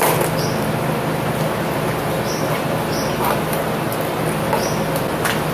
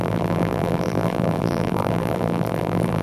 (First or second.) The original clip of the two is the first